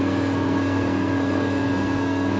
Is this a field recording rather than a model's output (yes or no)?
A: no